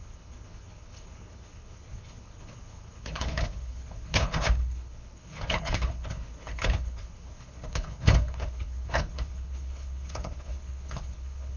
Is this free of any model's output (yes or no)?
no